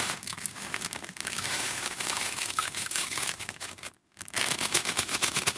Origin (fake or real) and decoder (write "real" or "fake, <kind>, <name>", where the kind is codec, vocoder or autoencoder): fake, autoencoder, DAC-VAE